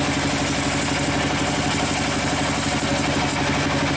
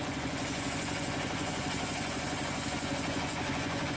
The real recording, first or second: first